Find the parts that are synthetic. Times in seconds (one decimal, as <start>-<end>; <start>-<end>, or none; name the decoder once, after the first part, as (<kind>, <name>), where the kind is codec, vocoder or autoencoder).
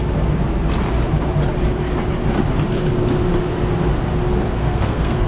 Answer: 4.6-5.3 (codec, SNAC)